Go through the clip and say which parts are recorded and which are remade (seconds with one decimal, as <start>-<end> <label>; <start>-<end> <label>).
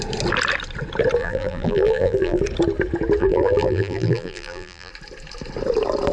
0.0-1.2 recorded; 1.2-2.4 remade; 2.4-3.2 recorded; 3.2-4.9 remade; 4.9-6.1 recorded